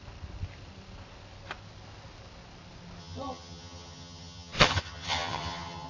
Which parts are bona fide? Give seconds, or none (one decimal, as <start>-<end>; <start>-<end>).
0.0-3.0

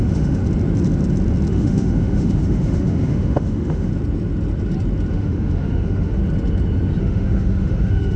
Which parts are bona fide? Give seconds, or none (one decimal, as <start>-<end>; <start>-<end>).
0.4-1.5; 3.9-5.1; 6.2-7.0

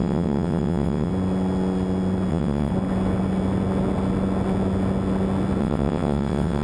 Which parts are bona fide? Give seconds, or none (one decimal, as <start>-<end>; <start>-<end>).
1.1-2.3; 2.7-5.6

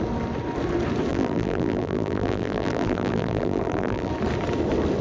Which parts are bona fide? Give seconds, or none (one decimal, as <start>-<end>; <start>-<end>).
0.0-1.1; 4.1-5.0

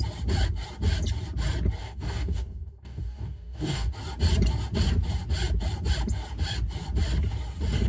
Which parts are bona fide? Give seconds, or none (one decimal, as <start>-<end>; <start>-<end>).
0.0-1.8; 3.9-7.9